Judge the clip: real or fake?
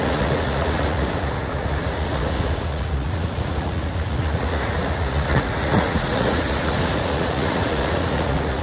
fake